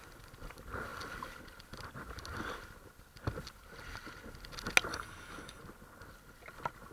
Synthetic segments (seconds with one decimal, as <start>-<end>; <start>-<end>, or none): 4.9-5.6